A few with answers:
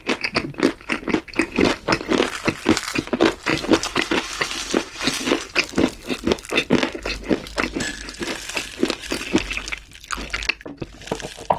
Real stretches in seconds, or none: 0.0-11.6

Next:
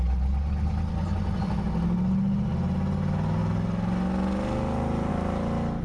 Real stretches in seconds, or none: 0.0-5.8

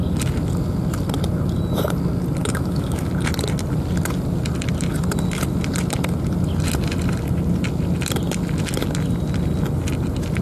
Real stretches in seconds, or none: 0.0-2.4; 3.1-10.4

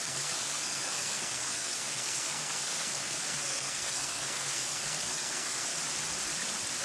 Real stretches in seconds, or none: 5.7-6.8